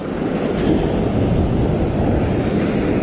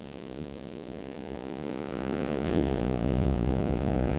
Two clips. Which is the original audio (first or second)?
first